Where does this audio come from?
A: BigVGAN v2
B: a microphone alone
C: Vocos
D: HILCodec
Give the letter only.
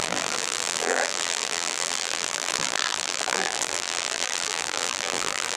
A